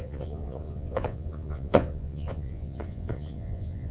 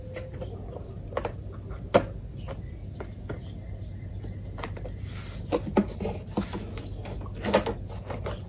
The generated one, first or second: first